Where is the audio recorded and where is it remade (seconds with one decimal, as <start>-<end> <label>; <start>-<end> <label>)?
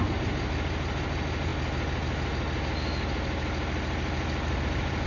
0.0-5.1 recorded